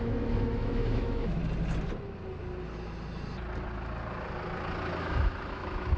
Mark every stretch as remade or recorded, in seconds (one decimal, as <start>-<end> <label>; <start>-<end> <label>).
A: 0.0-1.4 remade; 1.4-5.0 recorded; 5.0-6.0 remade